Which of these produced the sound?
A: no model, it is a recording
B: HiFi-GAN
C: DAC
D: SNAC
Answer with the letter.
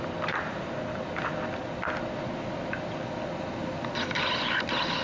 A